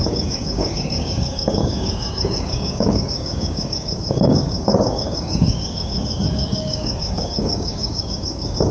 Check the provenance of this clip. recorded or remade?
remade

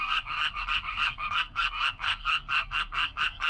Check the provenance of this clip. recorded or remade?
remade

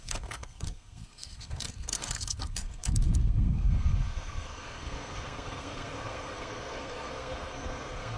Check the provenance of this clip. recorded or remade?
remade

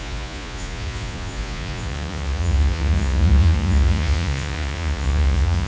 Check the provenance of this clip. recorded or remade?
remade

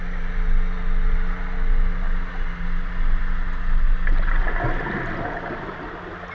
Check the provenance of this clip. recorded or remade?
recorded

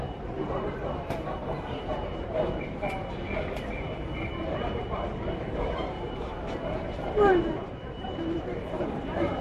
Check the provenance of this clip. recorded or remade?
remade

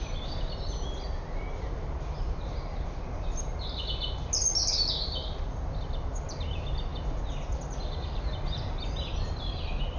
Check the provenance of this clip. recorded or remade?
recorded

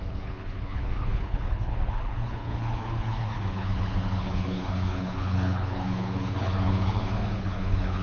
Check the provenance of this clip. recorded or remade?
remade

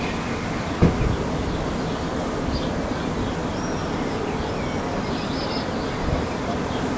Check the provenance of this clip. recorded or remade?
recorded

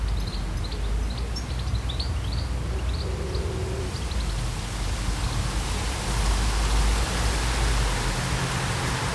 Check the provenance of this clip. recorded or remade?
recorded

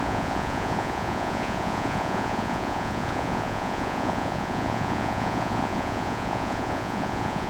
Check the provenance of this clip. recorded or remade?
remade